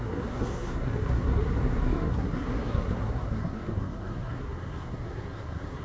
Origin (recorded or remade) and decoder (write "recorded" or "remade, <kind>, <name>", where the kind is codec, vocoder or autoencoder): remade, codec, SNAC